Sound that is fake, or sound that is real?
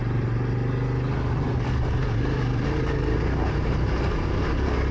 real